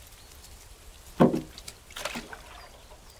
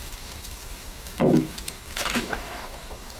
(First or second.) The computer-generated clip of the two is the second